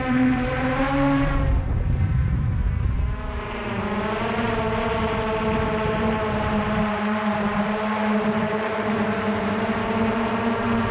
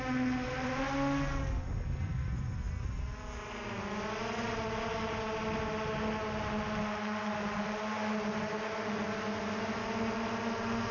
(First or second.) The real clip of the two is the second